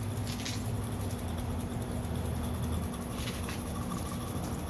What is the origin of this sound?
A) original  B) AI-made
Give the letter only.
A